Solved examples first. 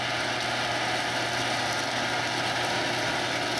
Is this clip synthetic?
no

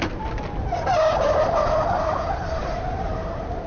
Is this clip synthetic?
no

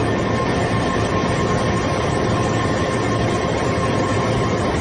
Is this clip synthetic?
no